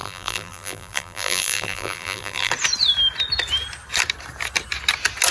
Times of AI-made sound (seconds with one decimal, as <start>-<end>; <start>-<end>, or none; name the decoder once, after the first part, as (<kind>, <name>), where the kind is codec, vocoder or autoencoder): 0.0-2.5 (vocoder, BigVGAN v2)